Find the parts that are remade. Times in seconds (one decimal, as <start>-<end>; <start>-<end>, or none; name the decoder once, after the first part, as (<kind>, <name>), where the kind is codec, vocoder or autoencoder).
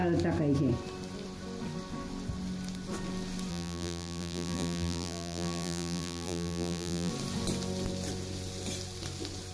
3.5-7.1 (vocoder, BigVGAN v2)